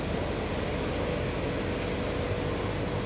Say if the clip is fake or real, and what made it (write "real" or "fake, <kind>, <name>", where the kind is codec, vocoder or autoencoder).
real